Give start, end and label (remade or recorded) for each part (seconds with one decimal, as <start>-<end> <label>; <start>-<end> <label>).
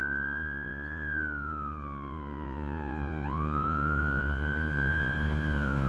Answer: 0.0-5.9 remade